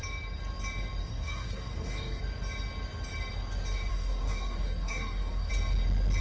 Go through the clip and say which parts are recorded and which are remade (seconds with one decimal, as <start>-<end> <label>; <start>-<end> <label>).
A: 0.0-1.0 recorded; 1.0-2.2 remade; 2.2-3.9 recorded; 3.9-5.5 remade; 5.5-6.2 recorded

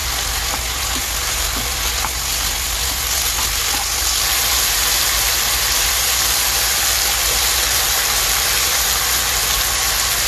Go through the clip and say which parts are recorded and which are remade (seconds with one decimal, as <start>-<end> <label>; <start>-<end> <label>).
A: 0.0-10.3 recorded

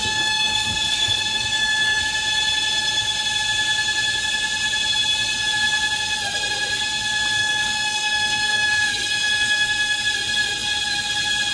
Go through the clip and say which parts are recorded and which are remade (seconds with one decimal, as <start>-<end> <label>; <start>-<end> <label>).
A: 0.0-2.0 remade; 2.0-7.4 recorded; 7.4-10.0 remade; 10.0-11.5 recorded